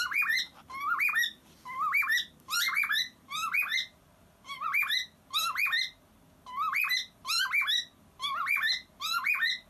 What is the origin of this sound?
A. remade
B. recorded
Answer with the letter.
B